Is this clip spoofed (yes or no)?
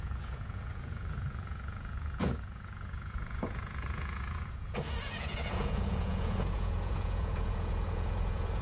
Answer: yes